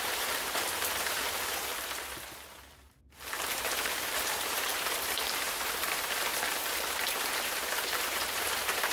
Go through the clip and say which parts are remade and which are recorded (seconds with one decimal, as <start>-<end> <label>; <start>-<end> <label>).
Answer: 0.0-1.7 remade; 1.7-3.4 recorded; 3.4-6.3 remade; 6.3-6.9 recorded; 6.9-8.9 remade